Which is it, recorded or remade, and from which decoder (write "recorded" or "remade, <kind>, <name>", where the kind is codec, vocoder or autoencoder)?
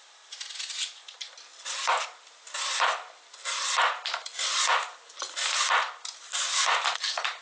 recorded